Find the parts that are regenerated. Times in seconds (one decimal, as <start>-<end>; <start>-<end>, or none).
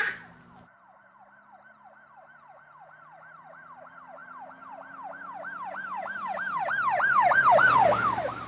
0.0-8.5